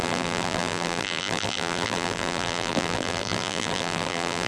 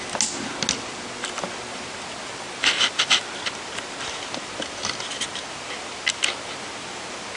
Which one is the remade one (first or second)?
first